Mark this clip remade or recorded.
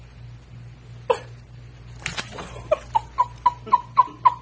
recorded